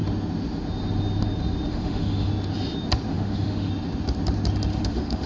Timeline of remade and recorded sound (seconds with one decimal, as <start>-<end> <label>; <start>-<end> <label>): 0.0-1.7 recorded; 1.7-2.3 remade; 2.3-3.1 recorded; 3.1-3.7 remade; 3.7-4.7 recorded; 4.7-5.3 remade